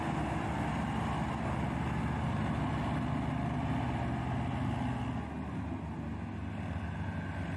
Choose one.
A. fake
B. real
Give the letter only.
B